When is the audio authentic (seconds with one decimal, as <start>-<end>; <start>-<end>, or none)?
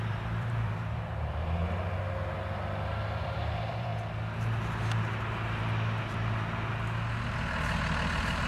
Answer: 1.6-3.2; 3.9-8.1